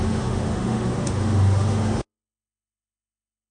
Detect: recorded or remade remade